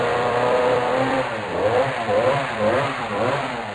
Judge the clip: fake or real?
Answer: fake